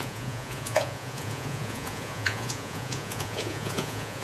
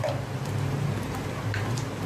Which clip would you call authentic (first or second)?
second